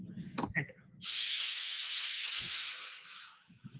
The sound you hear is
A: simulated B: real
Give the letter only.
A